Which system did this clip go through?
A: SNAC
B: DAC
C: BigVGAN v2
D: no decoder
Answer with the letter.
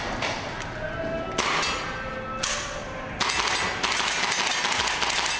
D